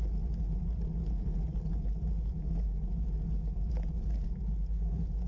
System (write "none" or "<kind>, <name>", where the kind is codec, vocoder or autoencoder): none